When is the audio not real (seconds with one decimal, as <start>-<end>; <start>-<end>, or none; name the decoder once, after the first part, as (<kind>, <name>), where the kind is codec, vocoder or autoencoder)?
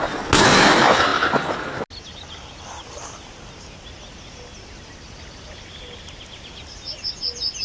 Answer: none